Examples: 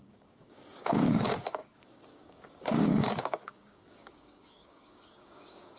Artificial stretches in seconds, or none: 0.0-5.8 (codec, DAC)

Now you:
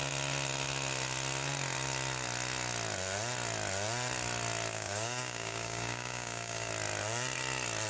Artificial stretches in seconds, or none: 4.7-6.7 (codec, DAC)

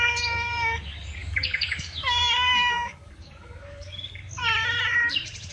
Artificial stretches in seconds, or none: 0.0-4.4 (codec, DAC)

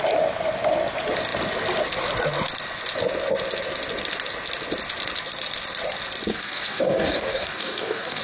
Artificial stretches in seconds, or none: 6.3-8.2 (codec, DAC)

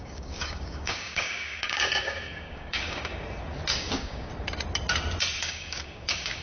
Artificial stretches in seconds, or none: 0.0-3.1 (codec, DAC); 3.7-4.3; 5.4-6.4

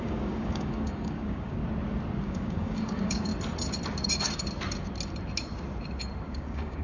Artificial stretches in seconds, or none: 0.0-1.6 (codec, DAC); 2.2-3.3; 6.2-6.8

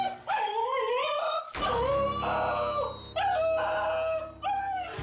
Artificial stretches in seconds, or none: 0.0-0.6 (codec, DAC); 1.4-1.9

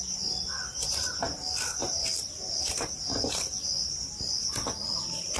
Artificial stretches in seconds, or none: none